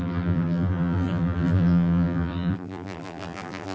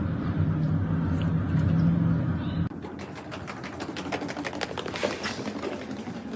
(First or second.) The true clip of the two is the second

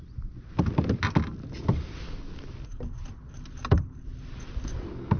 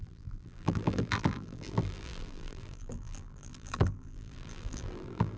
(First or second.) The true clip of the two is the first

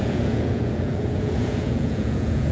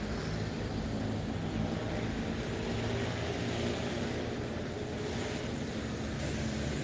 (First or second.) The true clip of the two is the second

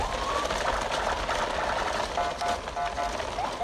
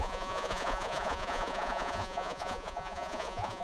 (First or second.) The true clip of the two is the first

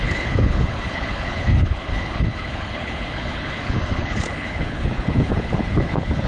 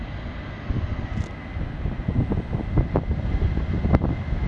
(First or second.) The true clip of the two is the second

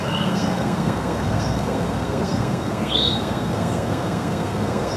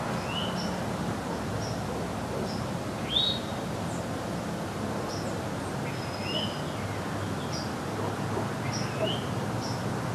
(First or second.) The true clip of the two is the second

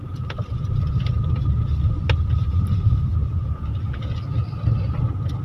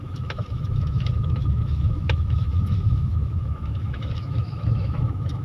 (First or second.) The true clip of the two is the first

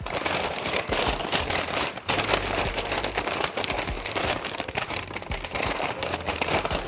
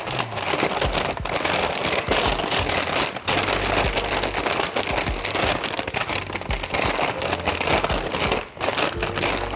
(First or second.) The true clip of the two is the second